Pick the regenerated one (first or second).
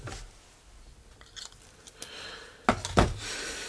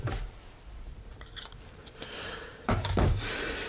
second